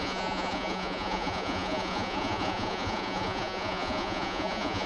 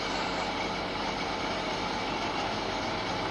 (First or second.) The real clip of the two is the second